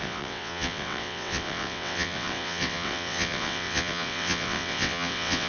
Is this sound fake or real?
fake